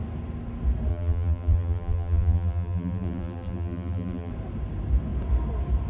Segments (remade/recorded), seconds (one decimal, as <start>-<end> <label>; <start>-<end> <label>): 0.0-0.9 recorded; 0.9-4.3 remade; 4.3-5.9 recorded